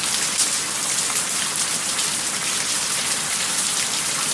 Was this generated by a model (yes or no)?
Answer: no